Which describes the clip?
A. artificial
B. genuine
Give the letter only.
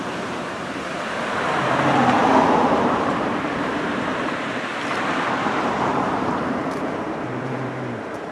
A